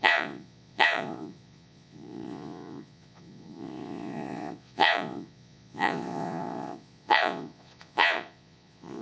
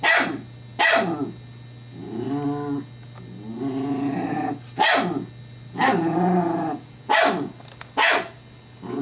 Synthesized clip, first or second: first